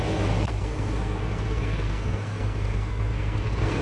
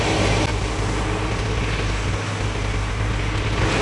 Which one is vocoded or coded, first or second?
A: first